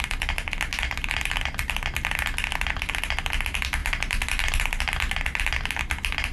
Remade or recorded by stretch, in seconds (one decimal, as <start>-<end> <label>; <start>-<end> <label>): 0.0-6.3 recorded